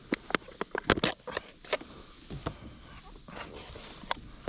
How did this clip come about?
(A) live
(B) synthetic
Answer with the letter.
A